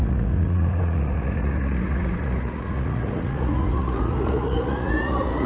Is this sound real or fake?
fake